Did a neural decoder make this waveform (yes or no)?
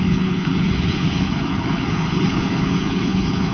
yes